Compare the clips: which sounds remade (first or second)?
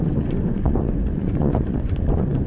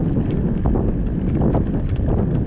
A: first